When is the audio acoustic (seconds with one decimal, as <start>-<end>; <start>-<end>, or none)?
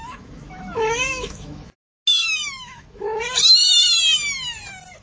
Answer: 1.7-2.1; 3.2-5.0